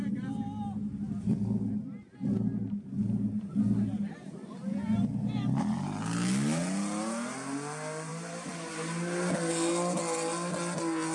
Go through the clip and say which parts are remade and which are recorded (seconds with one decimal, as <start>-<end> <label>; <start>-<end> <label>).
0.0-11.1 recorded